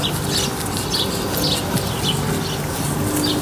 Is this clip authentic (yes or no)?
yes